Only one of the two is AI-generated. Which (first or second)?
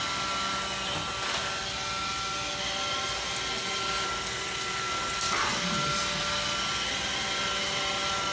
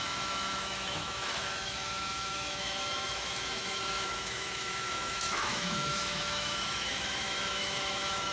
second